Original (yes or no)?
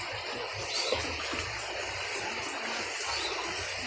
yes